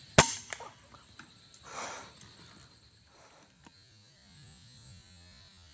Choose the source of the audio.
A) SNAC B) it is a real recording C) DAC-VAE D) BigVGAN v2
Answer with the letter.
B